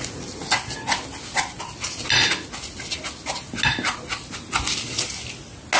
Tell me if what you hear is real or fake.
real